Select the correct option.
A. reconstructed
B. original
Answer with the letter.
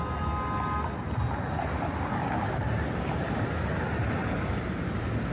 B